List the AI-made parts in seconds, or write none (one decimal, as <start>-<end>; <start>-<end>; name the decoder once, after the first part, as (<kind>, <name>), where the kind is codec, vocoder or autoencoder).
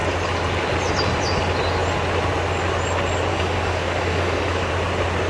3.3-4.7 (codec, DAC)